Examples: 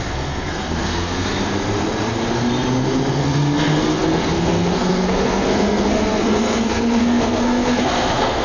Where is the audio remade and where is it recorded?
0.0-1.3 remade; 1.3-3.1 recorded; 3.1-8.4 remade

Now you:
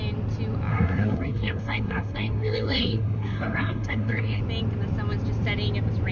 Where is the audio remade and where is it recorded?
0.0-0.7 recorded; 0.7-4.4 remade; 4.4-6.1 recorded